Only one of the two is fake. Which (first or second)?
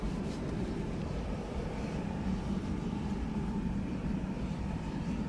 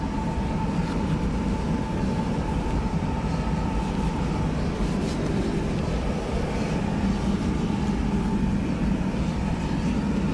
first